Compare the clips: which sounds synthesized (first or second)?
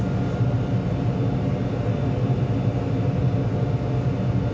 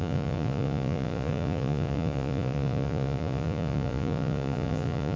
second